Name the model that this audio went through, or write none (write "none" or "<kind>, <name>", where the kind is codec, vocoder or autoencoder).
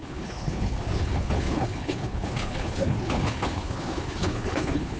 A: codec, HILCodec